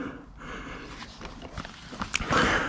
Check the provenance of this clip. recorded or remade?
recorded